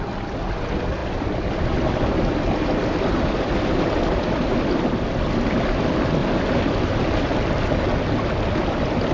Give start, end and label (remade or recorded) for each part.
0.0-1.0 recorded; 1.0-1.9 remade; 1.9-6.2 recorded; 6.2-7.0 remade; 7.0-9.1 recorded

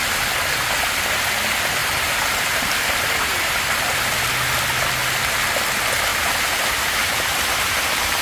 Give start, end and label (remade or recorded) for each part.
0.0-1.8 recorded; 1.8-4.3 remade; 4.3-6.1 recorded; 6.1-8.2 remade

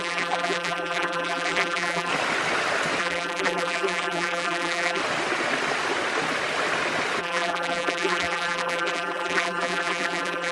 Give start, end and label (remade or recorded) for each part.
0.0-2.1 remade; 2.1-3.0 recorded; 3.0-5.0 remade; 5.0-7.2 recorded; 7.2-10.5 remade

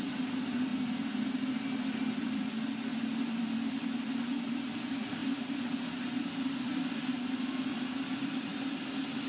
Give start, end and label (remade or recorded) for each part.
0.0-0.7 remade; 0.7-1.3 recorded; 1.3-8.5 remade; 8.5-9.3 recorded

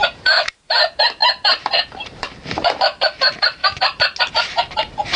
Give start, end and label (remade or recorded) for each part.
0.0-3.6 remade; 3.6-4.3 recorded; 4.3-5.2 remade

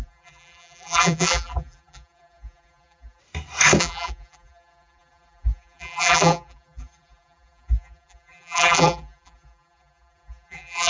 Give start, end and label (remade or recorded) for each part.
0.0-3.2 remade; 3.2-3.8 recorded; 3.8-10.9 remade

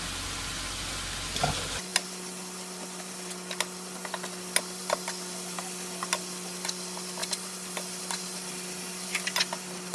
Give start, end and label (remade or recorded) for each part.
0.0-7.2 recorded; 7.2-8.0 remade; 8.0-9.9 recorded

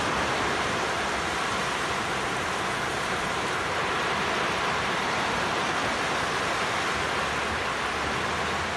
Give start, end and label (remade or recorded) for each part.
0.0-1.5 recorded; 1.5-6.5 remade; 6.5-8.8 recorded